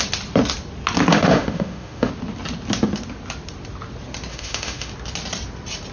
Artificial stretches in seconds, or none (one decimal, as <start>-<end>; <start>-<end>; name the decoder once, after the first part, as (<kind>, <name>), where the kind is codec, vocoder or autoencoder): 1.1-2.1 (autoencoder, DAC-VAE); 4.3-4.9